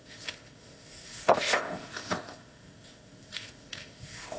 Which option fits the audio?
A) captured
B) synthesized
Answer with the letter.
B